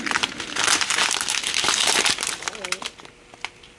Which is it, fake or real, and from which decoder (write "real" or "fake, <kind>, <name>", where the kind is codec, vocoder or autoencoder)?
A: real